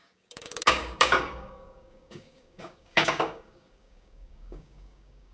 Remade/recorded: remade